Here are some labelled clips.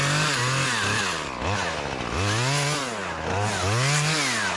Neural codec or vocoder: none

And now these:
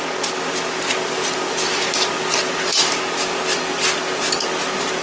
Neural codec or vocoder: none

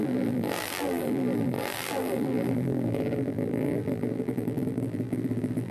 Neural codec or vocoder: vocoder, BigVGAN v2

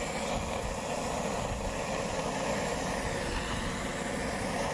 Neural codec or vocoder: none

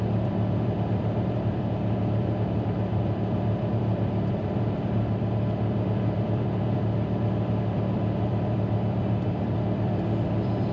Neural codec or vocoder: vocoder, BigVGAN v2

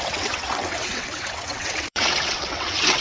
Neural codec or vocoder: vocoder, WaveNeXt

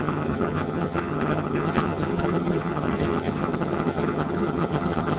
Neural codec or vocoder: vocoder, HiFi-GAN